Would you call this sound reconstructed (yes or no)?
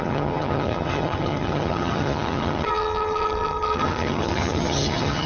yes